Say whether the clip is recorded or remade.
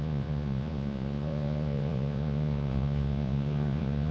remade